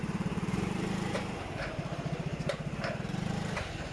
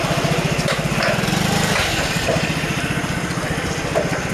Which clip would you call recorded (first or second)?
second